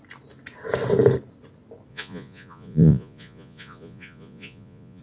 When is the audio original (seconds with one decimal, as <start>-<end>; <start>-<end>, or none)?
0.0-1.9